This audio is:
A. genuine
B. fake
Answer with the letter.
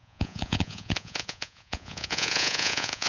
B